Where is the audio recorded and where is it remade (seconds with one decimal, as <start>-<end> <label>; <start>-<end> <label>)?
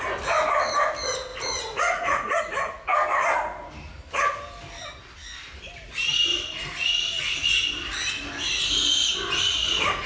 0.0-1.3 recorded; 1.3-2.4 remade; 2.4-6.3 recorded; 6.3-7.5 remade; 7.5-10.1 recorded